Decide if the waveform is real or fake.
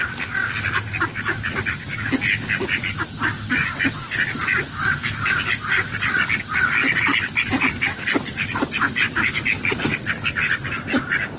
real